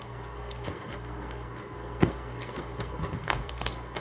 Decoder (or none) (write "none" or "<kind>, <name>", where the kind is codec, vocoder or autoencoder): codec, SNAC